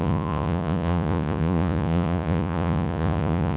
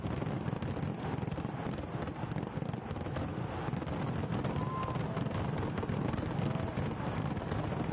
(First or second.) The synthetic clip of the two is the first